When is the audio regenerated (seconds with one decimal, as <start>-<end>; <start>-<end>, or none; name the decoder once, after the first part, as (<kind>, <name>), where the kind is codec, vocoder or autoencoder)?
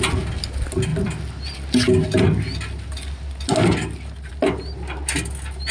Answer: none